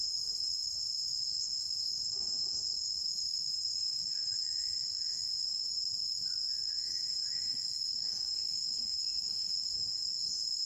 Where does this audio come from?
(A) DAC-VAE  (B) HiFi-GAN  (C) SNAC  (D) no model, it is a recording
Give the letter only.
A